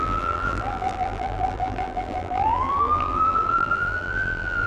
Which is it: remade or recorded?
remade